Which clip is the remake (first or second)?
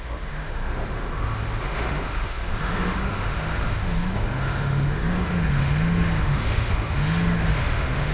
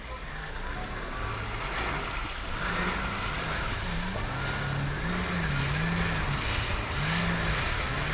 first